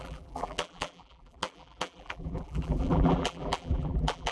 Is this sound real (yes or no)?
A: no